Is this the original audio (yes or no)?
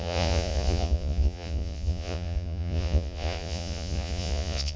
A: no